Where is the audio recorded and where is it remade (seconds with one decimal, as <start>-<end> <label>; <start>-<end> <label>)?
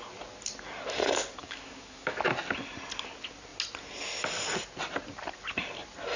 0.0-1.4 recorded; 1.4-2.2 remade; 2.2-6.2 recorded